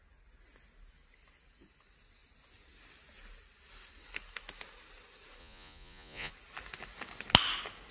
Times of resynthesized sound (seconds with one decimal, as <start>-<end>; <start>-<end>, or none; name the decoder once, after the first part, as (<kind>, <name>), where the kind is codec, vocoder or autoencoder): 5.4-6.3 (vocoder, Vocos)